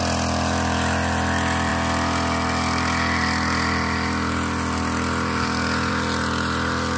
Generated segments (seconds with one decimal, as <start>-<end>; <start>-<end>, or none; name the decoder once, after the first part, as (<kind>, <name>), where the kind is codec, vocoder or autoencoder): none